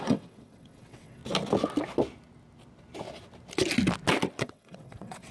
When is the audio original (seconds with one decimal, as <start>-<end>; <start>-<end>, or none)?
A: 1.2-4.4